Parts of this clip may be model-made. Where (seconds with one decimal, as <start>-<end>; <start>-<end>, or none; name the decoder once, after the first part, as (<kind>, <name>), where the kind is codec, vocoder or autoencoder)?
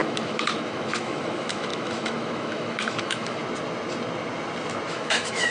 0.0-3.4 (autoencoder, DAC-VAE); 4.9-5.5